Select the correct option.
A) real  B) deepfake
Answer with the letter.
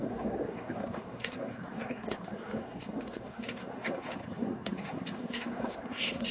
B